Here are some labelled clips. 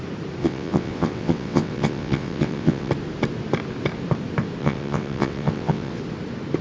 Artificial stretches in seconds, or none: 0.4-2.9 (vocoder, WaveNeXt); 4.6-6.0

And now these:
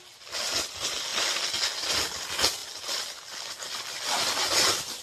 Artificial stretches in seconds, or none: none

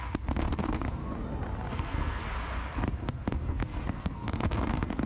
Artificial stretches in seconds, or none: 0.0-1.0 (codec, SNAC); 1.7-2.2; 3.3-5.1

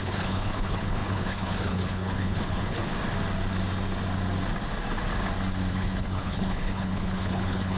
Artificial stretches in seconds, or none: 0.0-2.8 (codec, HILCodec); 5.7-7.8

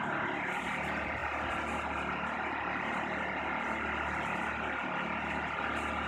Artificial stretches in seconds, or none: none

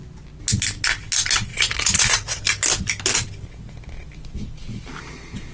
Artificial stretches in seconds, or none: 1.5-2.4 (vocoder, Vocos)